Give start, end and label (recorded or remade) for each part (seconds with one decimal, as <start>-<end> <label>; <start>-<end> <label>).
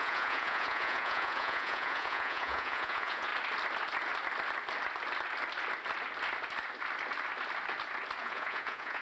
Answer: 0.0-3.3 remade; 3.3-8.2 recorded; 8.2-9.0 remade